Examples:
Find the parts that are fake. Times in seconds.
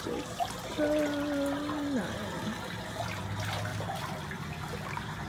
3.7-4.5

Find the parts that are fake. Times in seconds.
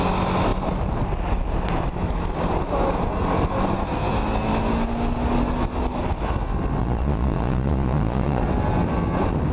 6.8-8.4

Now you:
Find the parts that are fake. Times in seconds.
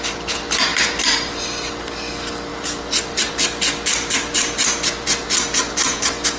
0.7-1.4; 2.5-3.3